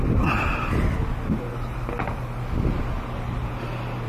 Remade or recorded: recorded